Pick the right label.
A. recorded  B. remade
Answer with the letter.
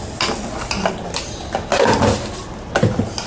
A